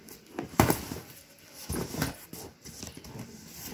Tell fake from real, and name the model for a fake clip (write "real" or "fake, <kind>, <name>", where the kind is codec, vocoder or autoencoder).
fake, vocoder, BigVGAN v2